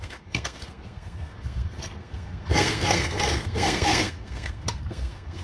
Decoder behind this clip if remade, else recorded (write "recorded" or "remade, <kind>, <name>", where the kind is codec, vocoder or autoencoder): remade, codec, SNAC